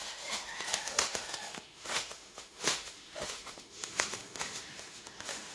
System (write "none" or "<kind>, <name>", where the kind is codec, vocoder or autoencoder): autoencoder, DAC-VAE